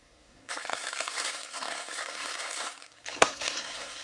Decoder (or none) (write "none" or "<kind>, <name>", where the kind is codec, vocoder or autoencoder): codec, SNAC